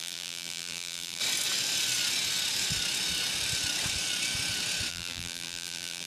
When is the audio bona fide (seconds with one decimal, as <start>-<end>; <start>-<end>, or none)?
1.2-4.9